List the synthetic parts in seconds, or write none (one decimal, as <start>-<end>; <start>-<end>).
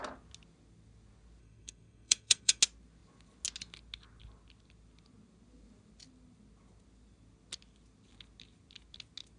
1.4-2.6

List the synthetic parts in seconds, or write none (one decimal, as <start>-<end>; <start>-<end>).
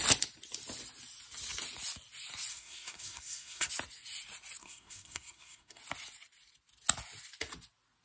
2.5-3.7; 4.6-5.8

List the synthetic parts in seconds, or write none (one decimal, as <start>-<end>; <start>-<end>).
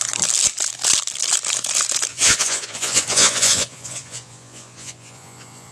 2.1-5.7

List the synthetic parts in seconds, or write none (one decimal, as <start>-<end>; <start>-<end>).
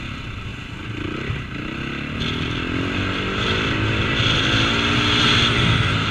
none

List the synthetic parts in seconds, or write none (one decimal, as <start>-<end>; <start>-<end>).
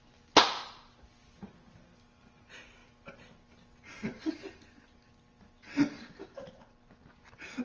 none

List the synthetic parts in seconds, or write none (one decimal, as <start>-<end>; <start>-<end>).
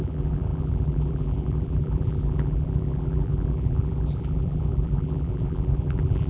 0.0-6.3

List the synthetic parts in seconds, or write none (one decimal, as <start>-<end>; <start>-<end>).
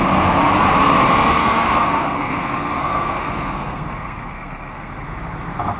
1.4-4.9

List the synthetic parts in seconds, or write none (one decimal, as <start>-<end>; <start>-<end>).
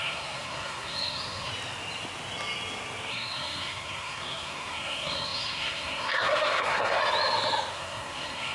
0.0-1.5; 3.1-7.0; 7.7-8.5